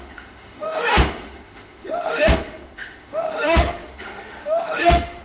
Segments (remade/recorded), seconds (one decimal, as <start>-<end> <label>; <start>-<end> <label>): 0.0-5.2 remade